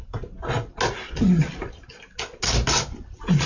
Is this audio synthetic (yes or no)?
no